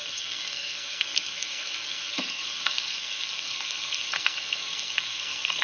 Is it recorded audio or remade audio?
remade